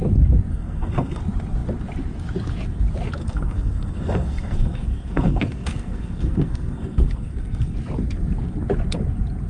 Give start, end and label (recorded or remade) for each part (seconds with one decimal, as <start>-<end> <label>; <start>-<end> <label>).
0.0-0.5 recorded; 0.5-1.2 remade; 1.2-3.2 recorded; 3.2-7.7 remade; 7.7-9.5 recorded